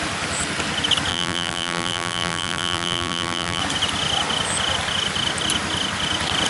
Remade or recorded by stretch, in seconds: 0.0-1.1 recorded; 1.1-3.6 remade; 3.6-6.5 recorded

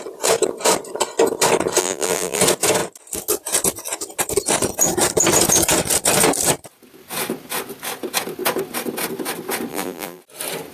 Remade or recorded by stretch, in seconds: 0.0-1.8 recorded; 1.8-2.4 remade; 2.4-9.7 recorded; 9.7-10.2 remade; 10.2-10.7 recorded

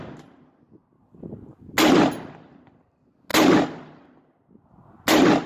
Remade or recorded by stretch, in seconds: 0.0-5.5 recorded

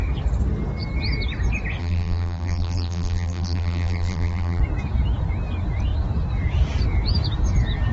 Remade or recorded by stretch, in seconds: 0.0-1.8 recorded; 1.8-4.6 remade; 4.6-7.9 recorded

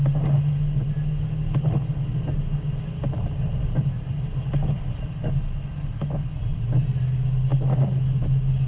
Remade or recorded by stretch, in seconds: 0.0-8.7 recorded

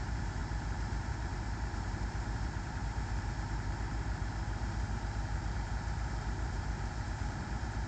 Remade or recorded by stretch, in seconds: 0.0-0.4 remade; 0.4-1.1 recorded; 1.1-7.9 remade

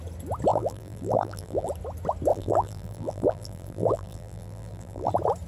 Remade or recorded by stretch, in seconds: 0.0-0.5 recorded; 0.5-1.7 remade; 1.7-2.3 recorded; 2.3-5.1 remade; 5.1-5.5 recorded

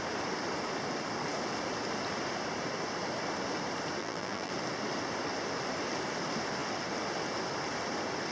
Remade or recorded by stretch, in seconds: 0.0-4.0 recorded; 4.0-4.5 remade; 4.5-8.3 recorded